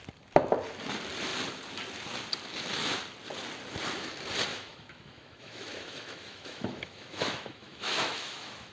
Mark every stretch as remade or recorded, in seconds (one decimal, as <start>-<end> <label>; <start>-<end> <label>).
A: 0.0-4.5 recorded; 4.5-8.7 remade